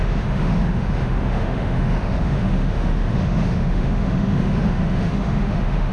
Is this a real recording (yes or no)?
no